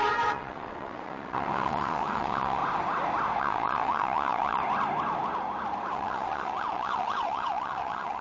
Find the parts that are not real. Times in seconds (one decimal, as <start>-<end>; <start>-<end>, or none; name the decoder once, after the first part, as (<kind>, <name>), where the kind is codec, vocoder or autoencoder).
0.0-2.6 (vocoder, WaveNeXt); 3.4-4.6; 5.9-8.2